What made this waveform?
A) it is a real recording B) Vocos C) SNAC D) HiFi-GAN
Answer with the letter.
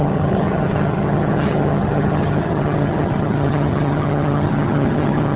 D